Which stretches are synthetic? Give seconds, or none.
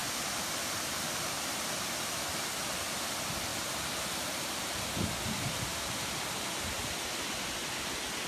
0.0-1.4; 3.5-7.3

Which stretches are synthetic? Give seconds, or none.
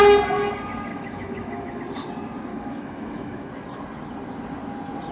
0.9-1.8; 2.5-3.5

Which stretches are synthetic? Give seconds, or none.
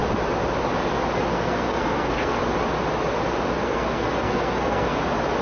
1.3-2.4; 3.6-5.0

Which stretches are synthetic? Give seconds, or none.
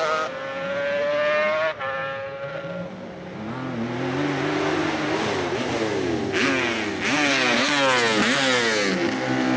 none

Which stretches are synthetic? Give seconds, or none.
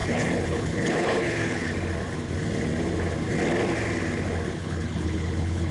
0.0-1.7; 4.6-5.7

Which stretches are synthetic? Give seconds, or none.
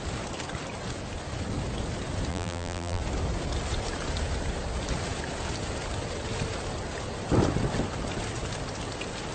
2.3-3.0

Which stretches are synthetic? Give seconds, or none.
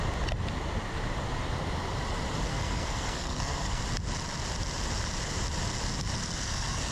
2.5-3.8; 6.2-6.9